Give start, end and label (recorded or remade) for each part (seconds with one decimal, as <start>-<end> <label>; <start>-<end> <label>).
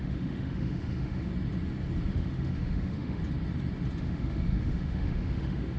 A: 0.0-1.3 remade; 1.3-2.1 recorded; 2.1-3.2 remade; 3.2-4.0 recorded; 4.0-5.8 remade